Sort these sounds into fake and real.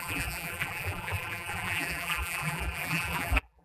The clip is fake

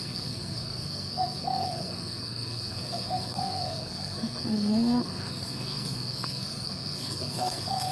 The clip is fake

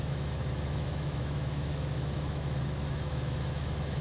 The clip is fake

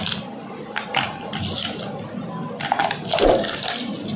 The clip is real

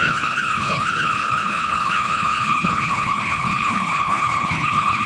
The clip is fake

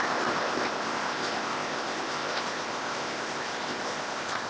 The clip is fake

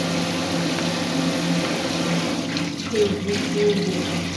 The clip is real